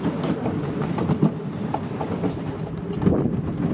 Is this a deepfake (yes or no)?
no